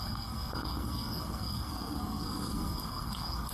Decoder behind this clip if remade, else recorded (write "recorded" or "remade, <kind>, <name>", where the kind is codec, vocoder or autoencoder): remade, codec, SNAC